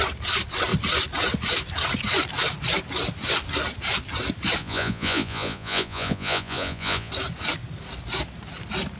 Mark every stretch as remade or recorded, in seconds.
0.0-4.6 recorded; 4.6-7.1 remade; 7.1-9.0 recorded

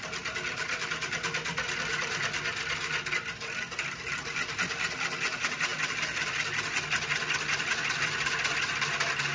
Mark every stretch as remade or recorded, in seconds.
0.0-9.3 recorded